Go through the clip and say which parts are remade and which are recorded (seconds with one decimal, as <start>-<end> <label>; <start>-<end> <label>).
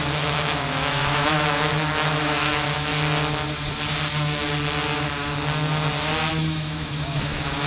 0.0-2.9 remade; 2.9-6.3 recorded; 6.3-7.7 remade